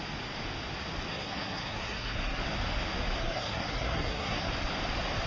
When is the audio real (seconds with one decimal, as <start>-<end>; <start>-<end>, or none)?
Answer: 0.0-1.1; 2.4-3.2; 4.5-5.3